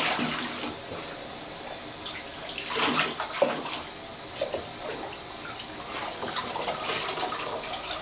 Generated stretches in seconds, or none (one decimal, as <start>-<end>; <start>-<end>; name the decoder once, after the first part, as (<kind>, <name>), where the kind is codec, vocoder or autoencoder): none